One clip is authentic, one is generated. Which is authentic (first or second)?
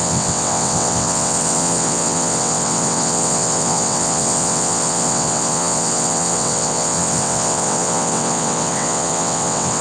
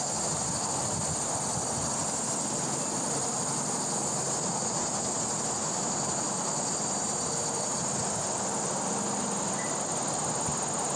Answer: second